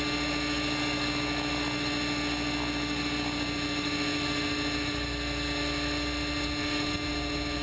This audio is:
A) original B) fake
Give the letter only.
A